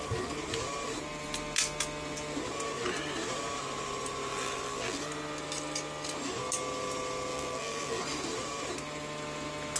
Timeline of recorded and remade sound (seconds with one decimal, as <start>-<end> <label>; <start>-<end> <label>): 0.0-4.3 recorded; 4.3-5.1 remade; 5.1-7.3 recorded; 7.3-8.0 remade; 8.0-9.8 recorded